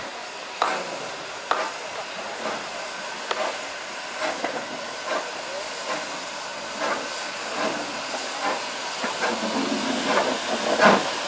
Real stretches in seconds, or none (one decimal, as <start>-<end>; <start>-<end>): 0.0-11.3